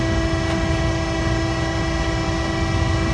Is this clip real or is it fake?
real